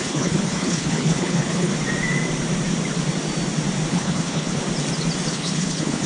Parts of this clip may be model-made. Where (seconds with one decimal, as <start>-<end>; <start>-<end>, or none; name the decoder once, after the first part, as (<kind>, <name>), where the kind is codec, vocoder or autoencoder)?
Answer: 0.0-1.7 (codec, HILCodec); 3.9-4.6; 5.3-6.1